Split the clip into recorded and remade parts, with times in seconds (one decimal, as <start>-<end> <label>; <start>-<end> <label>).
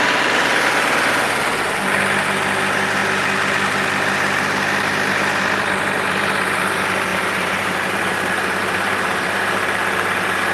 0.0-7.1 recorded; 7.1-9.5 remade; 9.5-10.5 recorded